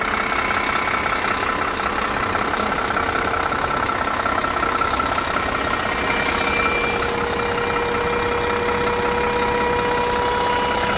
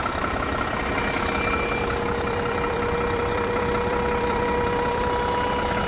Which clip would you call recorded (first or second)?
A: first